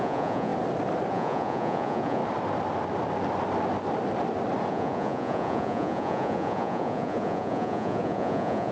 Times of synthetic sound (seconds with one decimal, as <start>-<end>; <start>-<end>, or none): 0.0-0.5; 1.1-2.2; 4.7-8.7